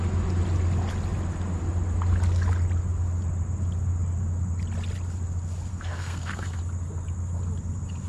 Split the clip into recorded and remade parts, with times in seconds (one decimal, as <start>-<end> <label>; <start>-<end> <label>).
0.0-5.7 recorded; 5.7-6.6 remade; 6.6-8.1 recorded